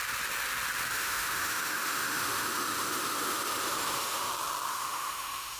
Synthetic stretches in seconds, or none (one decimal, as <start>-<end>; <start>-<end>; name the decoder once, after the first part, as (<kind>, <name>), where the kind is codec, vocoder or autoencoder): 0.9-4.3 (autoencoder, DAC-VAE); 4.7-5.6